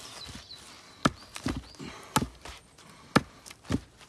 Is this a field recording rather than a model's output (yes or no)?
yes